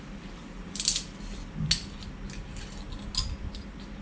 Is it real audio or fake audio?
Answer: real